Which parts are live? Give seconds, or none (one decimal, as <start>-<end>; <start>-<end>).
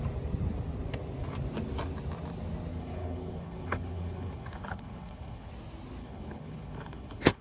0.0-2.7; 5.5-6.0